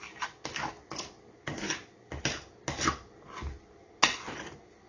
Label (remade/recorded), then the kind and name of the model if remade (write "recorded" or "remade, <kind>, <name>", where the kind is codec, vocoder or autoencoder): recorded